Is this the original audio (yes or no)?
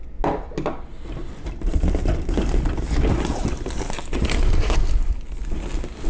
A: yes